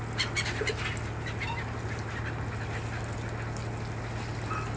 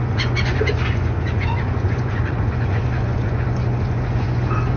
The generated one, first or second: second